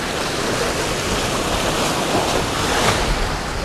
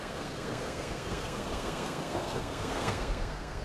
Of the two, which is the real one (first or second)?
first